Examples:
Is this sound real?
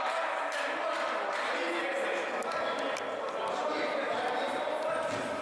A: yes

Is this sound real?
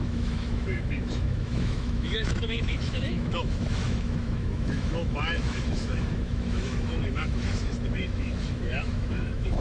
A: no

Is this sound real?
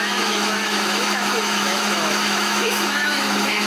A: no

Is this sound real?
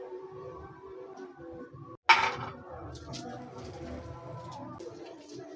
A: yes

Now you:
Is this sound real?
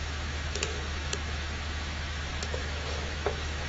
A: no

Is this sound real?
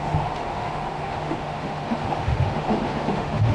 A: no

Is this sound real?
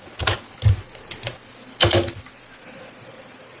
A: yes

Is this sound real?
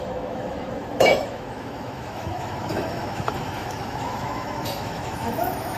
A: no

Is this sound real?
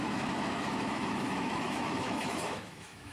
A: no